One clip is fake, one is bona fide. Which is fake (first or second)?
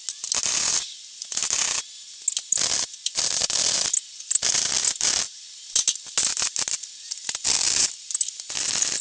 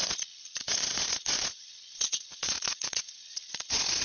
second